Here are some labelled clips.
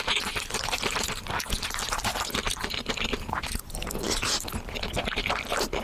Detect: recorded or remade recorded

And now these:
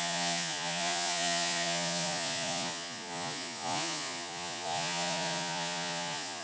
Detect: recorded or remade remade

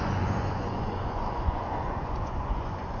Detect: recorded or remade remade